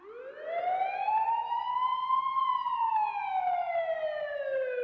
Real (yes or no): yes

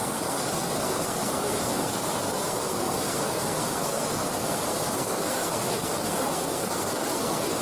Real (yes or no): no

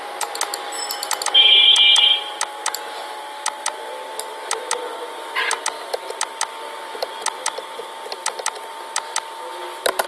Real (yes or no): yes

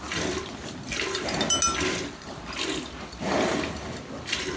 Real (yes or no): yes